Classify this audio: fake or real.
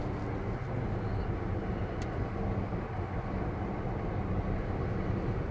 real